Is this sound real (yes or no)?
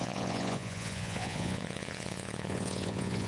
no